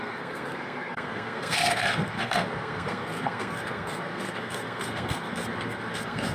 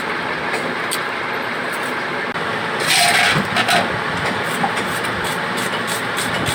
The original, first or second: second